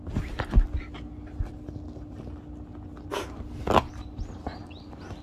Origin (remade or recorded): recorded